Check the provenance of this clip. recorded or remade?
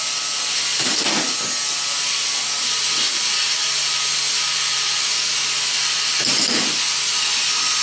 recorded